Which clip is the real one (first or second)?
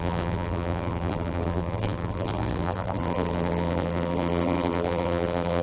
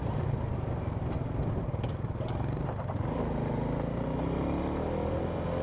second